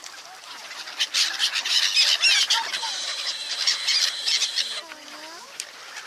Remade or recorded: recorded